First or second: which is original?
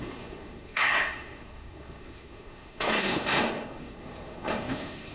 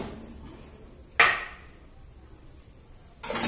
second